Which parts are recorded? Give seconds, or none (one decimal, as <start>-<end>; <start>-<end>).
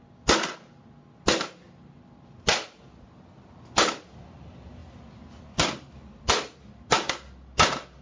0.0-8.0